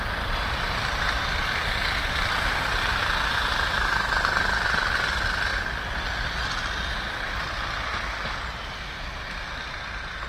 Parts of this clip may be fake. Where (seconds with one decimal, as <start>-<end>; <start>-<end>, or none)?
none

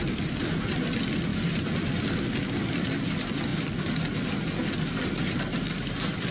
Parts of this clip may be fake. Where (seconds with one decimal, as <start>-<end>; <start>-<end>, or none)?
1.3-2.1

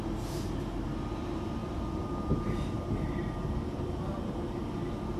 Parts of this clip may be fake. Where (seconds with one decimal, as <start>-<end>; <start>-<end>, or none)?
1.6-4.6

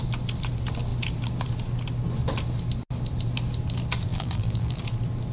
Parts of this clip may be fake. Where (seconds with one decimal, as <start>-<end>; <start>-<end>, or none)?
4.1-4.8

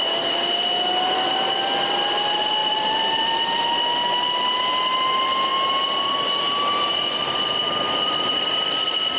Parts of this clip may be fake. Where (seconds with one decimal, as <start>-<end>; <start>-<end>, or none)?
2.6-3.6; 6.7-9.2